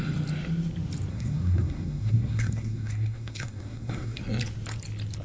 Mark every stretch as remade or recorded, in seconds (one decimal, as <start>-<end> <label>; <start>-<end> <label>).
0.0-1.1 recorded; 1.1-4.2 remade; 4.2-5.2 recorded